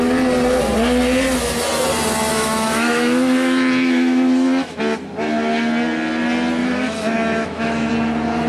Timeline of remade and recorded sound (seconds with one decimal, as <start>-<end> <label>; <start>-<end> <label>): 0.0-2.3 recorded; 2.3-4.8 remade; 4.8-6.6 recorded; 6.6-7.9 remade; 7.9-8.5 recorded